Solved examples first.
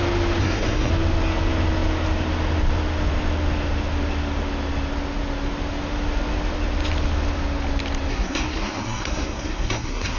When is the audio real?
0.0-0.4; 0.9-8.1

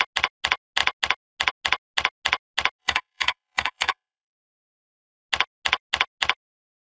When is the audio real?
0.0-2.8; 4.4-6.9